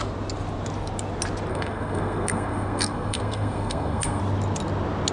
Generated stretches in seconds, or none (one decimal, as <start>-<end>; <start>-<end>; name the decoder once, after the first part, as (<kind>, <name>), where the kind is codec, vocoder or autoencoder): 1.5-4.2 (codec, SNAC)